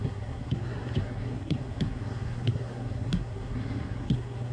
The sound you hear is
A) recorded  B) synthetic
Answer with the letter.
B